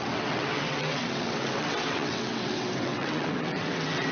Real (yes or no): no